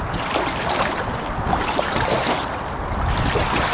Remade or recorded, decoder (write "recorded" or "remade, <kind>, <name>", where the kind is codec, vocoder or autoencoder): recorded